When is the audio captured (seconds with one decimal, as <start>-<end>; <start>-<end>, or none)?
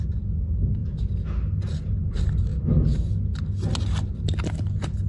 0.0-5.1